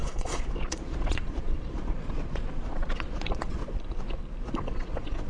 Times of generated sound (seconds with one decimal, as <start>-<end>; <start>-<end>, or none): 0.0-3.6; 4.5-5.3